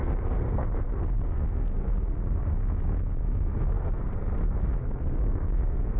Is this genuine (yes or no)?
no